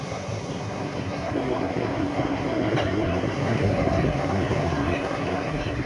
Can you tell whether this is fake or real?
fake